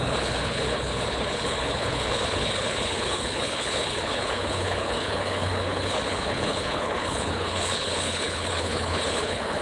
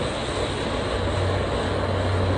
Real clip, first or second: second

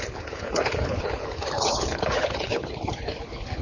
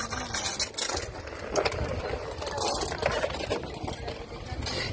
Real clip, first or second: second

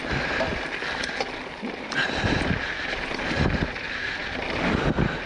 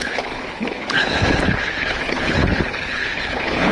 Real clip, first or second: first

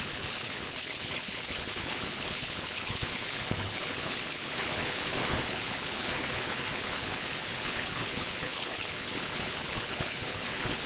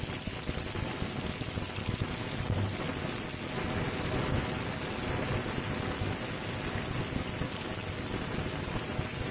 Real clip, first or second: second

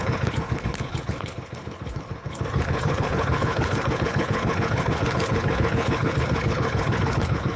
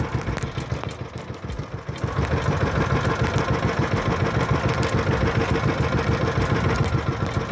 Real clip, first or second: second